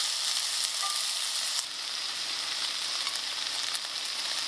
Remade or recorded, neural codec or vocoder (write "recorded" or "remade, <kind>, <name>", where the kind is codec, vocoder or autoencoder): recorded